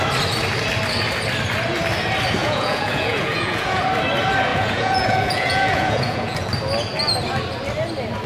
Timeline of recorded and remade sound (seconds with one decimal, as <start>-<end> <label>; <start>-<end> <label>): 0.0-2.4 recorded; 2.4-3.8 remade; 3.8-4.5 recorded; 4.5-6.5 remade; 6.5-8.3 recorded